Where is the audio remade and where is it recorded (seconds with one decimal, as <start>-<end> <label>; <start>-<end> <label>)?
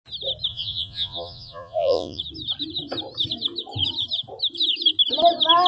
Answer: 0.0-0.5 recorded; 0.5-2.2 remade; 2.2-5.7 recorded